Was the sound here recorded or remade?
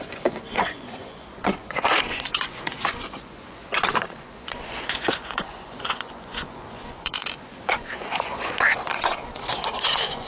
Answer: remade